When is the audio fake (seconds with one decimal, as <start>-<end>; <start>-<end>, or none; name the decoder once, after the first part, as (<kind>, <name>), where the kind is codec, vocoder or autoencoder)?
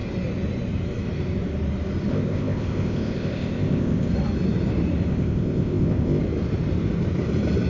2.1-4.1 (codec, ZipCodec); 5.1-6.2